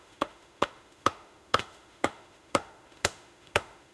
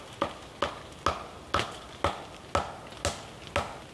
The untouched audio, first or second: second